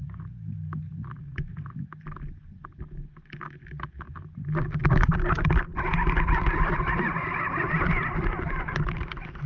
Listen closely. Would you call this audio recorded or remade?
recorded